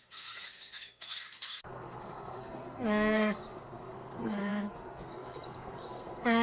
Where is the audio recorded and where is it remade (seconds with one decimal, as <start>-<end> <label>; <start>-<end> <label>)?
0.0-6.4 remade